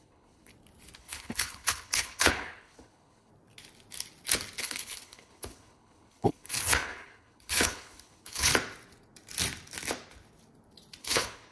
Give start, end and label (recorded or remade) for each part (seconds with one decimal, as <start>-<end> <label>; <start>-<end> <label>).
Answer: 0.0-0.5 remade; 0.5-1.0 recorded; 1.0-3.3 remade; 3.3-4.6 recorded; 4.6-8.5 remade; 8.5-11.0 recorded; 11.0-11.5 remade